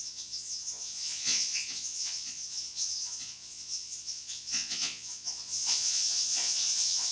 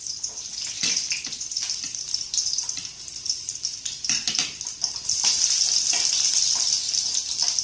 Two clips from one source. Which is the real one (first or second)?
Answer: second